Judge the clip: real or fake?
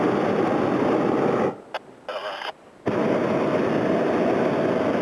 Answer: real